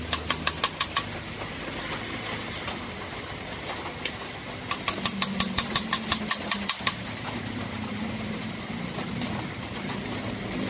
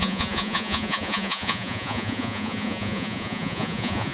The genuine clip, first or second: first